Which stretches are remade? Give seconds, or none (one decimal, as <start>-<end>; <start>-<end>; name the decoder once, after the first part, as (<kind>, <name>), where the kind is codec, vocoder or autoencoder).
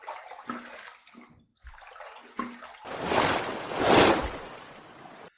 none